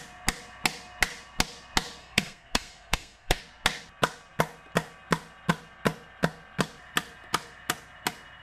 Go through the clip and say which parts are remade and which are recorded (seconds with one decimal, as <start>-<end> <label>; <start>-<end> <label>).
0.0-2.0 recorded; 2.0-3.4 remade; 3.4-8.4 recorded